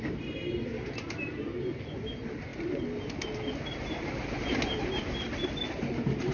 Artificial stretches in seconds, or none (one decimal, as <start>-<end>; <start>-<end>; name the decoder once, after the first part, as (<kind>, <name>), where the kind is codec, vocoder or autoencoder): none